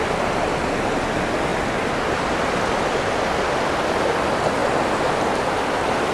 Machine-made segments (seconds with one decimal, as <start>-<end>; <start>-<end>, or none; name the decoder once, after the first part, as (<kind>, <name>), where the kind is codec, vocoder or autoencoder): none

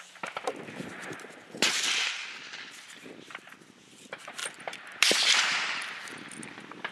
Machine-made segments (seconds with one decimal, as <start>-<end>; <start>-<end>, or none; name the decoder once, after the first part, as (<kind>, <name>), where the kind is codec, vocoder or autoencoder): 0.0-6.9 (vocoder, BigVGAN v2)

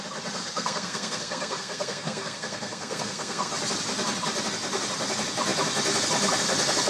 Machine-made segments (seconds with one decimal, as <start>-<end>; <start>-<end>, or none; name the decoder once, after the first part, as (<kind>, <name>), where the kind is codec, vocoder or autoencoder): 0.4-3.5 (codec, SNAC)

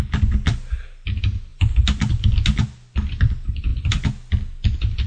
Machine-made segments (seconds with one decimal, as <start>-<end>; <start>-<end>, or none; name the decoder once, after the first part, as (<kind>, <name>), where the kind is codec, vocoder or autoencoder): none